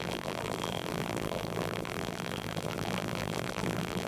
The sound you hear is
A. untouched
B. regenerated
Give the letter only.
B